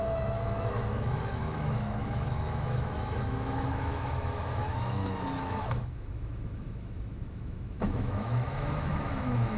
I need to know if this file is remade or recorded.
remade